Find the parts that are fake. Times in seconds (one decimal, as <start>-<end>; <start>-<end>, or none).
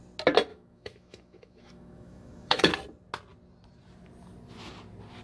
0.5-2.7